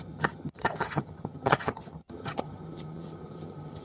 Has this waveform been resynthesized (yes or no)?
yes